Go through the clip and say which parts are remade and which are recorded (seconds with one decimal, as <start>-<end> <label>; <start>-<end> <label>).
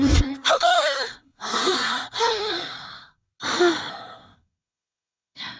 0.0-3.3 remade; 3.3-3.9 recorded; 3.9-5.6 remade